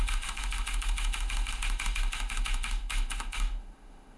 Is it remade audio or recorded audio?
remade